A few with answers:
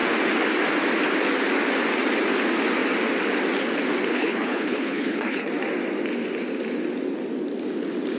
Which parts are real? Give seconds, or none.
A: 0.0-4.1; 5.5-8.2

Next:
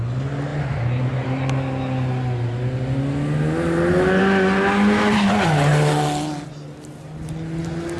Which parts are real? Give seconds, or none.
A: 0.0-8.0

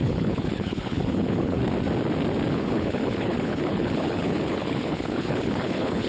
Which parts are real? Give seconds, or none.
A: 1.6-2.5